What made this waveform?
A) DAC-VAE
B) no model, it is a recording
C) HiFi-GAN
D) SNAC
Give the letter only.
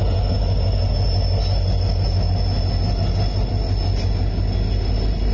B